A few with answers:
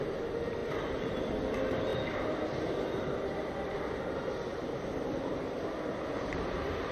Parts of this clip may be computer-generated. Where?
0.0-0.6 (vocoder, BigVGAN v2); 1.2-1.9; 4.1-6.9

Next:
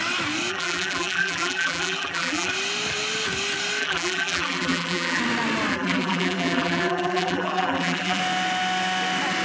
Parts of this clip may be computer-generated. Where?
0.5-2.5 (vocoder, BigVGAN v2); 3.8-5.2; 5.7-8.2

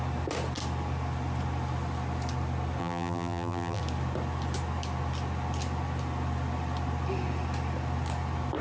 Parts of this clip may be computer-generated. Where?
2.8-3.8 (vocoder, BigVGAN v2)

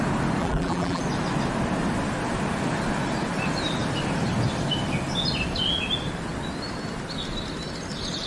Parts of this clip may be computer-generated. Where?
0.4-1.0 (vocoder, BigVGAN v2)

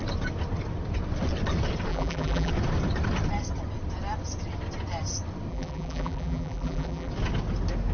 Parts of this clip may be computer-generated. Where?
1.9-2.5 (vocoder, BigVGAN v2); 5.5-7.1